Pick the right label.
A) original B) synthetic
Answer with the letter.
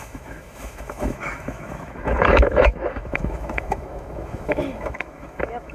B